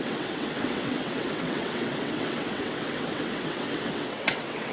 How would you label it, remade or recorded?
remade